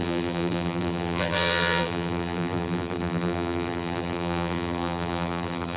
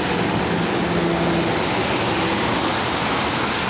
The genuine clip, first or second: second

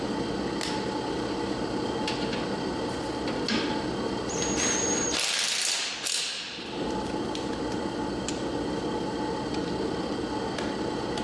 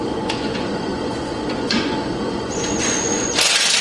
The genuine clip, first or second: first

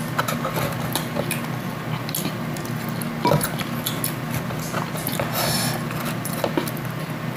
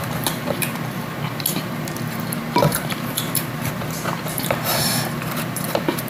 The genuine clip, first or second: first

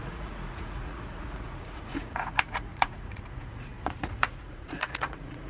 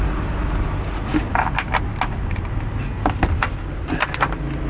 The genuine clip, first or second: second